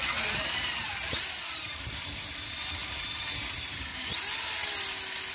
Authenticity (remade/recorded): recorded